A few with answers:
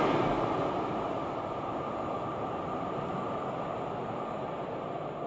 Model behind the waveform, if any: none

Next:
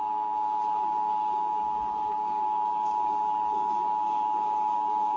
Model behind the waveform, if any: codec, DAC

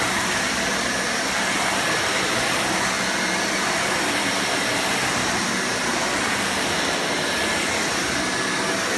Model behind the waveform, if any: none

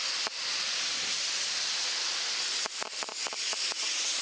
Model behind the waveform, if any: none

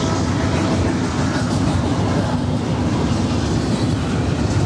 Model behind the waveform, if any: none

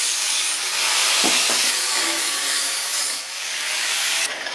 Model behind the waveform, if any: codec, DAC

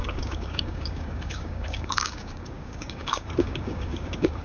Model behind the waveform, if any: codec, DAC